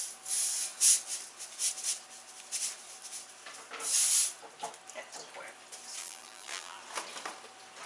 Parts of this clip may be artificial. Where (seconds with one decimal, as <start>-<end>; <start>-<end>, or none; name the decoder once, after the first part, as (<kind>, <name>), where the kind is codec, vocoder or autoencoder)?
6.0-6.8 (vocoder, BigVGAN v2)